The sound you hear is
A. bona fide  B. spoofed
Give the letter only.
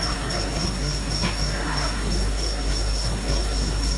B